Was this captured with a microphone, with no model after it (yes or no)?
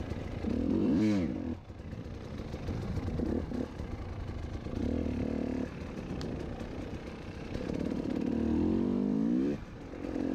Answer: no